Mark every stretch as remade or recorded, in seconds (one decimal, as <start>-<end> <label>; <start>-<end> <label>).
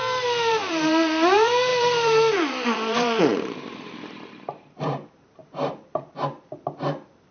0.0-7.3 remade